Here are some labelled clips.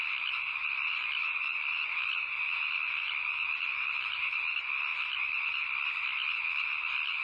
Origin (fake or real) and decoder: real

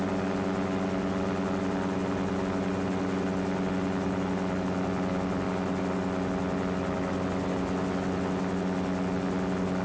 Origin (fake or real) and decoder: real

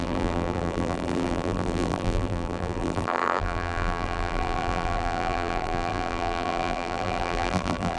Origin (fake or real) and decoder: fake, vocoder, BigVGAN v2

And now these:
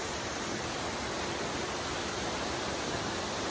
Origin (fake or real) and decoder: real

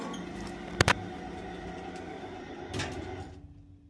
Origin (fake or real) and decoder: real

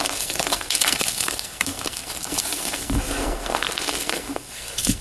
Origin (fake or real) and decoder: fake, codec, SNAC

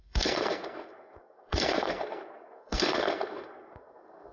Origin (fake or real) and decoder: fake, codec, SNAC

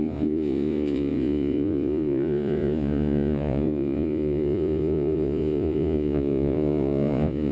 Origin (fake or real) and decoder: fake, vocoder, Vocos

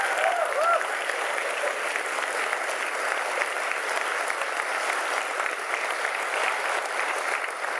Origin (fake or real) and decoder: real